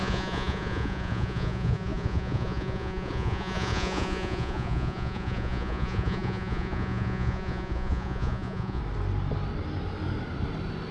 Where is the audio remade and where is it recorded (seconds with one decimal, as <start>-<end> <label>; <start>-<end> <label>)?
0.0-8.8 remade; 8.8-10.9 recorded